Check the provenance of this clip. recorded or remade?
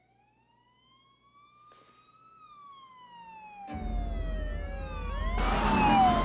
recorded